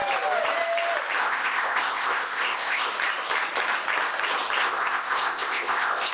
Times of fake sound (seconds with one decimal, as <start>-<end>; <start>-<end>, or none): 1.2-2.9; 4.6-6.1